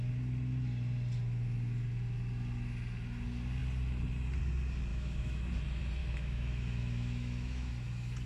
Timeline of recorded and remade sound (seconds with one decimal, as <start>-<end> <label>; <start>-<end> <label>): 0.0-4.9 recorded; 4.9-5.5 remade; 5.5-6.0 recorded; 6.0-7.7 remade; 7.7-8.3 recorded

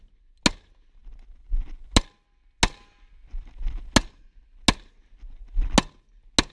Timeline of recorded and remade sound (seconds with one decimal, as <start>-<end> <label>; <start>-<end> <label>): 0.0-6.5 recorded

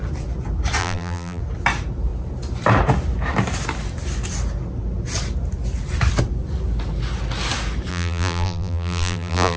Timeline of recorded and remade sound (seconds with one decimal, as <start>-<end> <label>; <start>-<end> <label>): 0.0-0.8 recorded; 0.8-1.4 remade; 1.4-7.9 recorded; 7.9-9.6 remade

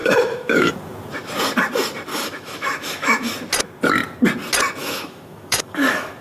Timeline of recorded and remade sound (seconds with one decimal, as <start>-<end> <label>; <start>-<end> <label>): 0.0-0.7 remade; 0.7-2.1 recorded; 2.1-3.3 remade; 3.3-4.8 recorded; 4.8-6.2 remade

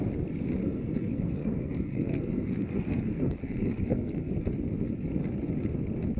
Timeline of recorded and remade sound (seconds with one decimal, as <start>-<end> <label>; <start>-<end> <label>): 0.0-0.6 recorded; 0.6-4.3 remade; 4.3-6.2 recorded